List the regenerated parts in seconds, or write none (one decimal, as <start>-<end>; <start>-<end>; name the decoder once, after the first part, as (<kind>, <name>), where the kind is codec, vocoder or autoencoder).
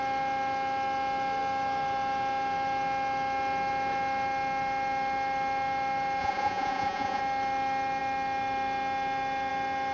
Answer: 6.2-7.2 (vocoder, Vocos)